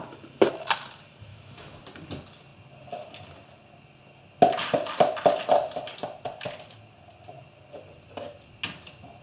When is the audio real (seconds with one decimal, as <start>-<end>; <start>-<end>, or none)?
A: 0.0-1.3; 1.8-9.2